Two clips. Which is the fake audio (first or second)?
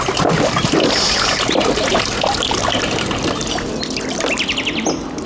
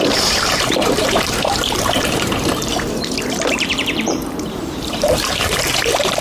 second